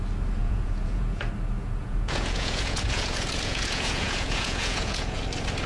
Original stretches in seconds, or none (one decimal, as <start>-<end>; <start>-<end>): 0.0-0.4; 1.3-1.8; 5.2-5.7